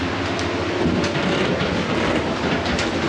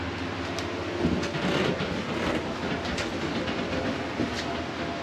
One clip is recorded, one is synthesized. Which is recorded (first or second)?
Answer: second